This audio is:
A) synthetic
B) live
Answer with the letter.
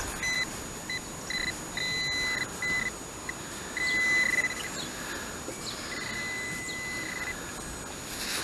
B